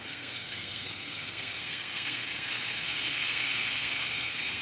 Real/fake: fake